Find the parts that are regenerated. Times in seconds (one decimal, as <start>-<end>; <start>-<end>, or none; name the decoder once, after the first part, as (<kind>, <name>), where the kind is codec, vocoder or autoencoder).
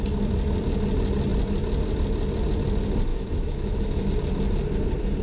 3.1-4.1 (autoencoder, DAC-VAE)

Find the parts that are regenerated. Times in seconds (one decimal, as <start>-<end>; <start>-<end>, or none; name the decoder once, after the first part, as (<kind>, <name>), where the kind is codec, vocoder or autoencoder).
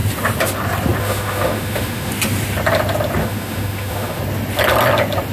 1.0-2.1 (autoencoder, DAC-VAE); 3.2-4.2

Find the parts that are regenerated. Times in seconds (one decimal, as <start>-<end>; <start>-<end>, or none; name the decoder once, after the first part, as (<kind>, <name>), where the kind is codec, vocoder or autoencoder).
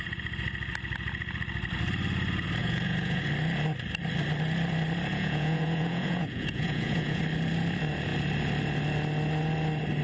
2.6-3.2 (vocoder, Vocos); 5.1-7.2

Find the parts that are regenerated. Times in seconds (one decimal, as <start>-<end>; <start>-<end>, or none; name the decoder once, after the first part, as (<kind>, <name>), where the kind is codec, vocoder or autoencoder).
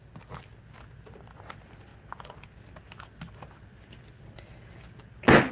none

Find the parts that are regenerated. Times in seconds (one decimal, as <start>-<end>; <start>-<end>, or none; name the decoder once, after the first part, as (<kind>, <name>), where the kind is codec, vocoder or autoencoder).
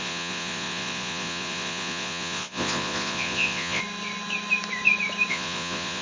0.0-3.8 (vocoder, Vocos); 5.3-6.0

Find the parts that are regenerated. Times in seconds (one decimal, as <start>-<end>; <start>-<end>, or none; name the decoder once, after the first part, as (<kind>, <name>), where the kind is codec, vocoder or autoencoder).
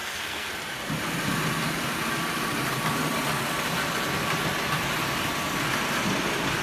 0.0-0.5 (codec, SNAC)